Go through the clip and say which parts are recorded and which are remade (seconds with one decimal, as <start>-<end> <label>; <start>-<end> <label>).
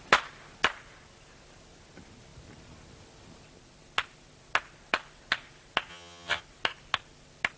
0.0-5.9 recorded; 5.9-6.4 remade; 6.4-7.6 recorded